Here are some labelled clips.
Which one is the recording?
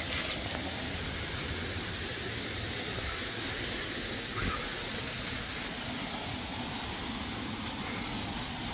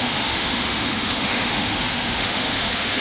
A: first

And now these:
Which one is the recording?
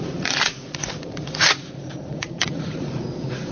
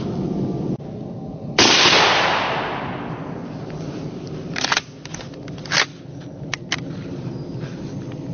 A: second